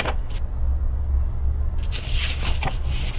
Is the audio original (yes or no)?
yes